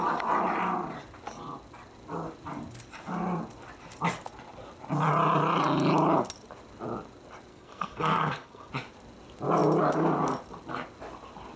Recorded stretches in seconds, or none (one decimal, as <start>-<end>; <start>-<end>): 0.0-7.5; 8.7-11.6